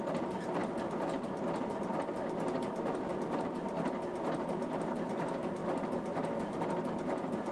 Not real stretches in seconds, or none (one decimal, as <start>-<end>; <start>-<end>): none